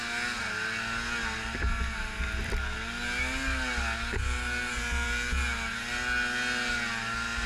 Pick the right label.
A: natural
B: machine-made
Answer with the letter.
A